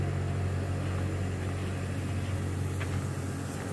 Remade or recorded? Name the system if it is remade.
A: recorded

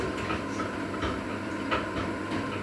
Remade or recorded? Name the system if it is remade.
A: remade, vocoder, BigVGAN v2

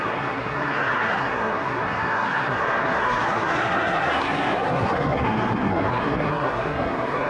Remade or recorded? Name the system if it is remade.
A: remade, codec, SNAC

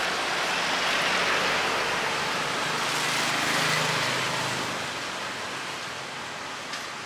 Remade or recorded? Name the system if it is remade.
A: recorded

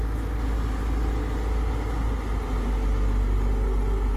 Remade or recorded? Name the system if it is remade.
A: recorded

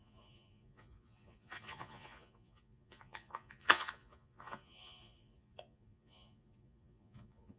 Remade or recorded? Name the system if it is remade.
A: remade, vocoder, Vocos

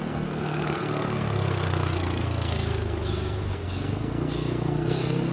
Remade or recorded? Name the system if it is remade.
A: remade, codec, SNAC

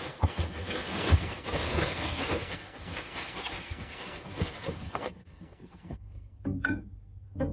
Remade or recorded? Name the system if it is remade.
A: remade, codec, SNAC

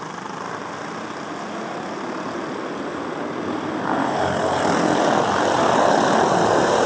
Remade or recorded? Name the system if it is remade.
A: recorded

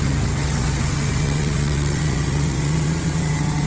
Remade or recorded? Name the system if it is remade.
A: remade, vocoder, WaveNeXt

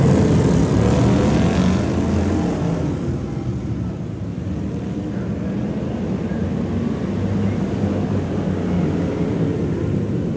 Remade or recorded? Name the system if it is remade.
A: recorded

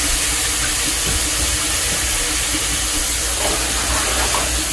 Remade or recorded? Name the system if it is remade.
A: recorded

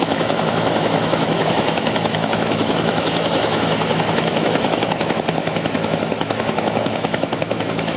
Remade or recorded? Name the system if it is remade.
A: remade, autoencoder, DAC-VAE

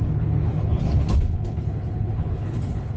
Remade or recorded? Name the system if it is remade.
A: remade, codec, HILCodec